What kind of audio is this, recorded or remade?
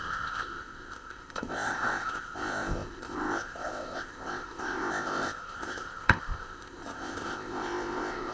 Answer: remade